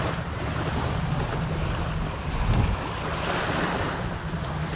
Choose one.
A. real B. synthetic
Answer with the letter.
A